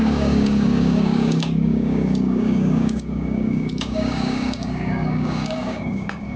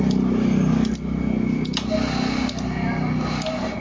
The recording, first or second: second